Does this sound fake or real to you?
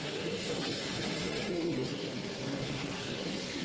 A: fake